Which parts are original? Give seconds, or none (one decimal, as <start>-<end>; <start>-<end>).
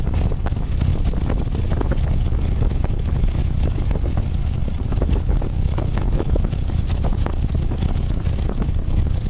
0.9-1.9